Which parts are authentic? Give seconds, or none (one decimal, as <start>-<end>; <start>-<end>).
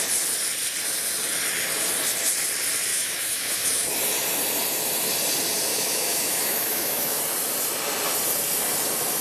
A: 0.0-2.9; 3.9-5.7; 7.2-9.2